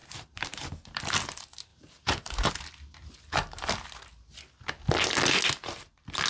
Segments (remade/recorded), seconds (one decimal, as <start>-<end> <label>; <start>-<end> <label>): 0.0-1.1 remade; 1.1-1.7 recorded; 1.7-2.5 remade; 2.5-6.3 recorded